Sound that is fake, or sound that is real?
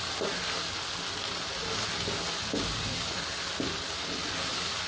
real